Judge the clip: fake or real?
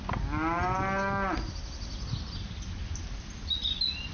real